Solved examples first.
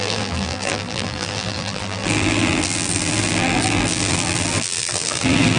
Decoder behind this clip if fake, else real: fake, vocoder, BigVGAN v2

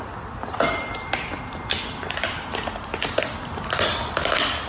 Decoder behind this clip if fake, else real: fake, vocoder, BigVGAN v2